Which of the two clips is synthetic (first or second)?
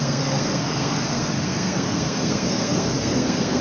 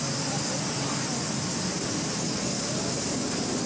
first